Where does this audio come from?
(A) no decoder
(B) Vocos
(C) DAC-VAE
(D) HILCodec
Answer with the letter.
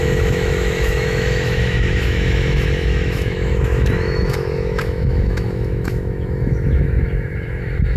C